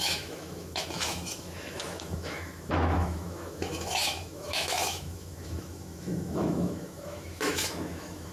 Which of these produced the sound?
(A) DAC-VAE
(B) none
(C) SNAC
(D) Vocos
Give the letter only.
A